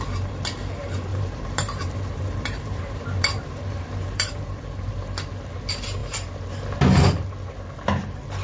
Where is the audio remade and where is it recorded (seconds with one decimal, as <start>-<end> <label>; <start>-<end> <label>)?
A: 0.0-1.1 recorded; 1.1-4.9 remade; 4.9-8.4 recorded

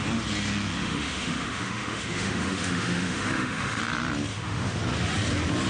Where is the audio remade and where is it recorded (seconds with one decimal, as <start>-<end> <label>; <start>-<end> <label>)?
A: 0.0-0.8 recorded; 0.8-3.8 remade; 3.8-4.3 recorded; 4.3-4.8 remade; 4.8-5.7 recorded

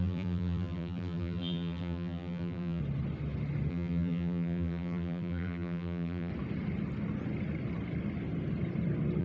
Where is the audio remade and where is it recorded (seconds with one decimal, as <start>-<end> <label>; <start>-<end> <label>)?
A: 0.0-2.8 remade; 2.8-3.7 recorded; 3.7-6.3 remade; 6.3-9.2 recorded

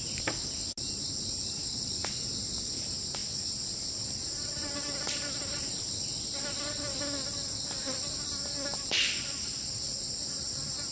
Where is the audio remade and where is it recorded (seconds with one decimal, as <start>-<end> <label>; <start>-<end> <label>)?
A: 0.0-10.9 recorded

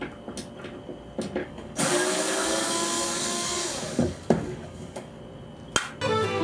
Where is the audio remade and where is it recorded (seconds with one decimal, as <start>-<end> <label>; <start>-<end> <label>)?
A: 0.0-1.4 recorded; 1.4-5.2 remade; 5.2-6.4 recorded